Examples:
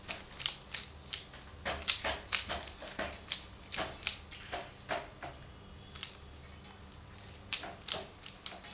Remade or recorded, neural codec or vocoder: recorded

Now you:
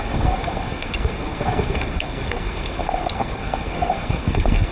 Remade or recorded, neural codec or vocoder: remade, codec, SNAC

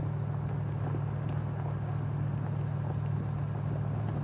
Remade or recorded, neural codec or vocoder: recorded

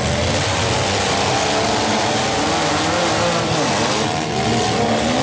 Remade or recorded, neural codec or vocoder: recorded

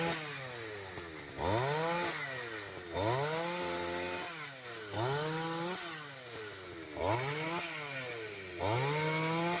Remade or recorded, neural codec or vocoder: recorded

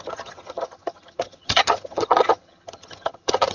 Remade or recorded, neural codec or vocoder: remade, vocoder, HiFi-GAN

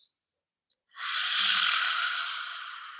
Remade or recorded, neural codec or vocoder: recorded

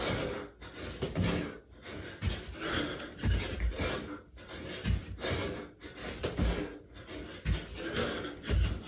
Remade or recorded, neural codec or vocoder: recorded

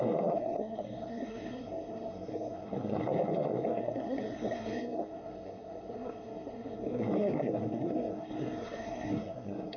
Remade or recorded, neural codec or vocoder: remade, codec, SNAC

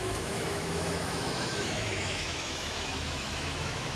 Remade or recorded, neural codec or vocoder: remade, autoencoder, DAC-VAE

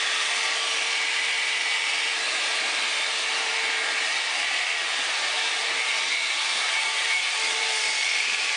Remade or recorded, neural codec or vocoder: remade, vocoder, BigVGAN v2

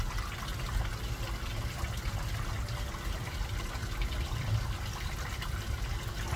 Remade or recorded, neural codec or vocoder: recorded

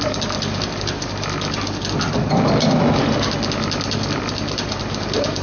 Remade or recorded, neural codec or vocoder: recorded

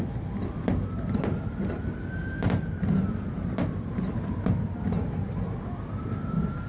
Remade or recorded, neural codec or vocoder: recorded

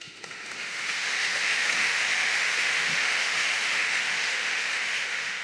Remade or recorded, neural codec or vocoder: remade, autoencoder, DAC-VAE